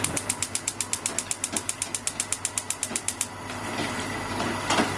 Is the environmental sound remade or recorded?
recorded